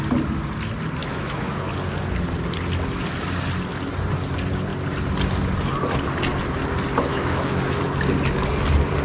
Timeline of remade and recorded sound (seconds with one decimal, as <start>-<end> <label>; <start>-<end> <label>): 0.0-1.0 recorded; 1.0-1.7 remade; 1.7-7.1 recorded; 7.1-7.8 remade; 7.8-9.0 recorded